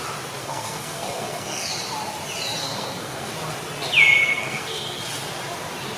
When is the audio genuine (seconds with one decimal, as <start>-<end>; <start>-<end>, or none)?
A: 0.0-0.4; 1.7-2.6; 3.3-4.2; 5.0-6.0